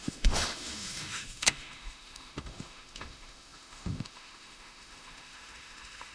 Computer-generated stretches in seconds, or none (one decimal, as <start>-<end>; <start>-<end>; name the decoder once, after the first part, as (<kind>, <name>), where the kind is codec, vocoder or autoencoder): 0.0-6.1 (autoencoder, DAC-VAE)